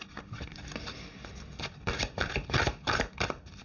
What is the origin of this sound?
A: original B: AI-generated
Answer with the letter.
B